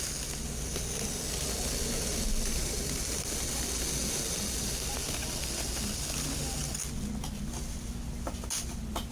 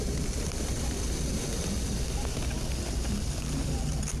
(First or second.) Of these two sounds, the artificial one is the second